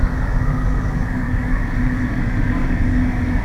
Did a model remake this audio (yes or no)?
yes